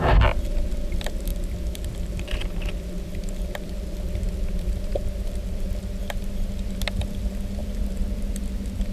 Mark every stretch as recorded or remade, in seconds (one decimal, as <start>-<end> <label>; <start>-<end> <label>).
0.0-1.3 recorded; 1.3-5.7 remade; 5.7-7.6 recorded; 7.6-8.4 remade; 8.4-8.9 recorded